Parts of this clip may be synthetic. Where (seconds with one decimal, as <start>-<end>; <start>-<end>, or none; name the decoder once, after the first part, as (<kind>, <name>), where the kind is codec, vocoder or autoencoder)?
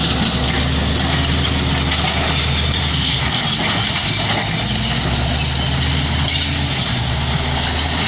2.8-3.4 (codec, SNAC)